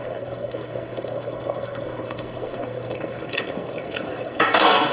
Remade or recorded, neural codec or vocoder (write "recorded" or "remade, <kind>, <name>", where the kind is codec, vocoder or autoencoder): remade, codec, SNAC